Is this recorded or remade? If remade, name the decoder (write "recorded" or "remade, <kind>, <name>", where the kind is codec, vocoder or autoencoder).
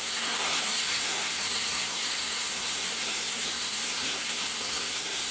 remade, codec, SNAC